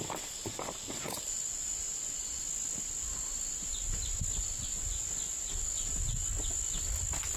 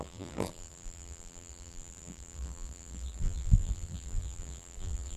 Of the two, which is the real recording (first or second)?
first